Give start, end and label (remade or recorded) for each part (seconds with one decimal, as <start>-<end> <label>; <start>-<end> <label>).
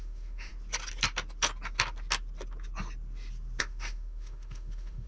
0.0-0.5 remade; 0.5-3.6 recorded; 3.6-5.1 remade